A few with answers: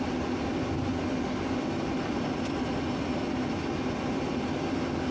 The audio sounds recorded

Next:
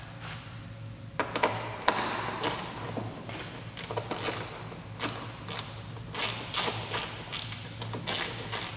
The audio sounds recorded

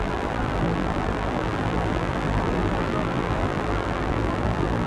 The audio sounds remade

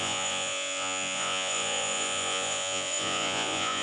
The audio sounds remade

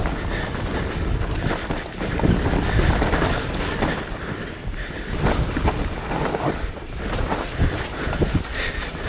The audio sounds recorded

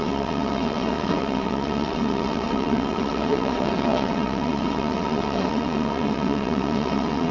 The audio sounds remade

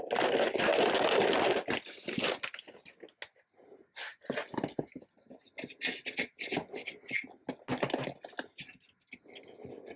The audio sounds recorded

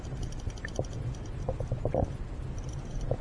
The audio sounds recorded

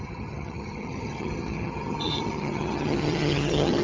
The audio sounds remade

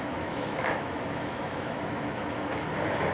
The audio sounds remade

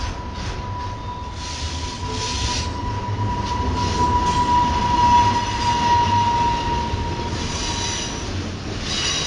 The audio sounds recorded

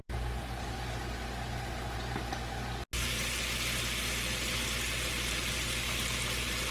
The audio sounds recorded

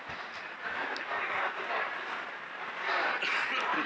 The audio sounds recorded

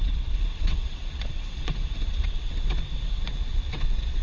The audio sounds remade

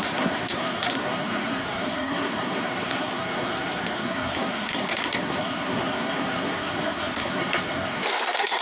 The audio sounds remade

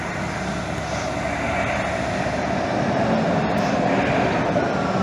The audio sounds recorded